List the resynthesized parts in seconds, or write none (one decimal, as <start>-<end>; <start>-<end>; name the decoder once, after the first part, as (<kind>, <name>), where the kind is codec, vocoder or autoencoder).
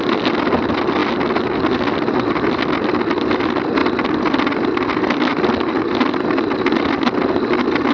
none